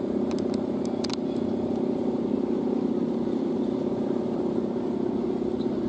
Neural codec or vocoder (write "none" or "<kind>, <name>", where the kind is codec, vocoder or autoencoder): none